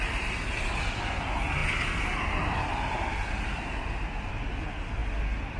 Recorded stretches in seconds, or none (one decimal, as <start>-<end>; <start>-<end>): 0.0-5.6